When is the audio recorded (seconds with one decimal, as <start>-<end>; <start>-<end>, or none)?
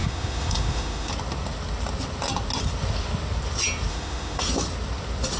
1.1-3.9; 4.4-5.4